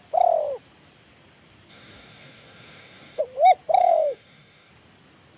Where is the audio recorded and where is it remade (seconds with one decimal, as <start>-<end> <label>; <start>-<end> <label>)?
0.0-1.7 recorded; 1.7-3.2 remade; 3.2-3.8 recorded; 3.8-4.7 remade; 4.7-5.4 recorded